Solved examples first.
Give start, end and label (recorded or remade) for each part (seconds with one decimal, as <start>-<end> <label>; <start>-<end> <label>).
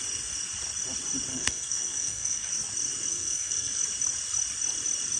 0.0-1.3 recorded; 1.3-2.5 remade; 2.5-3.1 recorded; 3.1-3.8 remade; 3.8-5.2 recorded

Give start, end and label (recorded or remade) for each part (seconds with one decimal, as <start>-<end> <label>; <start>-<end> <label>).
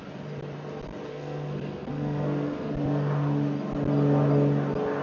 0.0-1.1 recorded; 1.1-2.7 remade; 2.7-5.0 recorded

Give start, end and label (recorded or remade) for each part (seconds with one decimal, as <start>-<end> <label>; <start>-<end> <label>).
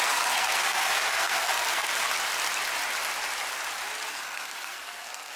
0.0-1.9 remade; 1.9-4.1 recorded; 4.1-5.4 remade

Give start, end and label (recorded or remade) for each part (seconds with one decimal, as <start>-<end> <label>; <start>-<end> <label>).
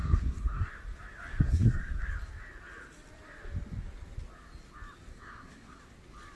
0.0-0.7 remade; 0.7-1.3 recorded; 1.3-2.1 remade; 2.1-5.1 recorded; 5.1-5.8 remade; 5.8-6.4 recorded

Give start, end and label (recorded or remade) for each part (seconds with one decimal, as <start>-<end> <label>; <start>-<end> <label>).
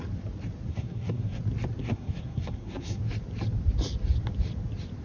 0.0-0.7 recorded; 0.7-1.4 remade; 1.4-1.8 recorded; 1.8-3.0 remade; 3.0-5.0 recorded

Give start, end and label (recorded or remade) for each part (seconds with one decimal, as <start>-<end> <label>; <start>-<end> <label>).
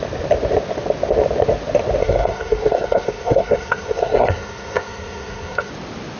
0.0-2.0 recorded; 2.0-5.7 remade; 5.7-6.2 recorded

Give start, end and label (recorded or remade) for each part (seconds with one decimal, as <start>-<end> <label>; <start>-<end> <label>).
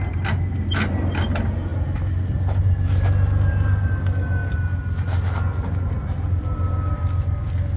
0.0-7.8 recorded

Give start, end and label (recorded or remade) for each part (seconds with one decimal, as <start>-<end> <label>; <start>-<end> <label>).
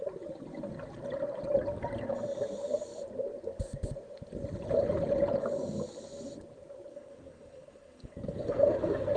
0.0-6.9 recorded; 6.9-9.2 remade